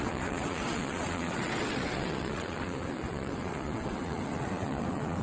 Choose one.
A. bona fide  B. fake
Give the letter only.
B